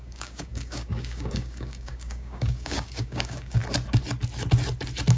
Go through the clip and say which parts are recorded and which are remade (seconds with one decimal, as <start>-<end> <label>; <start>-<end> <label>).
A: 0.0-3.6 remade; 3.6-5.2 recorded